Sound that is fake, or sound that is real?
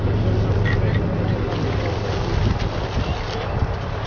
real